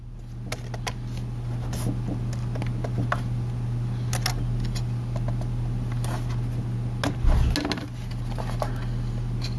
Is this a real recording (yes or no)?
yes